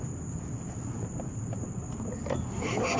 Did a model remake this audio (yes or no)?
no